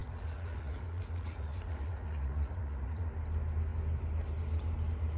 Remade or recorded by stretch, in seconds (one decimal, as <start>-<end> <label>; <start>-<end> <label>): 0.0-3.1 remade; 3.1-5.2 recorded